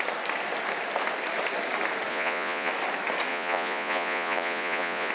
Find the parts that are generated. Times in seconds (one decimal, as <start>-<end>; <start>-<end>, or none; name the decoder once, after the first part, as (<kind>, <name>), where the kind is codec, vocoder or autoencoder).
2.1-2.7 (vocoder, Vocos); 3.3-5.1